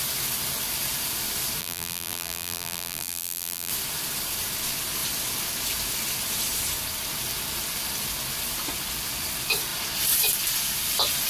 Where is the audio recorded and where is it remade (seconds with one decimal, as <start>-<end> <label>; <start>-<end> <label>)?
0.0-1.6 recorded; 1.6-3.7 remade; 3.7-11.3 recorded